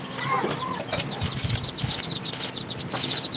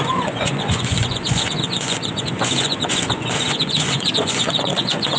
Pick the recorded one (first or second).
first